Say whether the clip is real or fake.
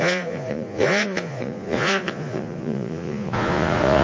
fake